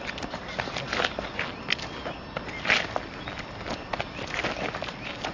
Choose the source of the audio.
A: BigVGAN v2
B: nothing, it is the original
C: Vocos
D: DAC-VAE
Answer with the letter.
B